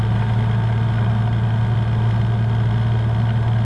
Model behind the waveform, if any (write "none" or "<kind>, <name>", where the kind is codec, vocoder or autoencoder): none